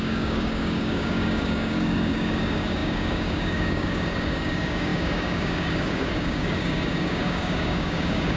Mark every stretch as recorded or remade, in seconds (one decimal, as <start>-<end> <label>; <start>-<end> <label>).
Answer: 0.0-8.4 remade